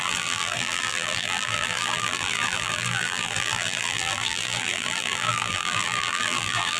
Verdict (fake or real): fake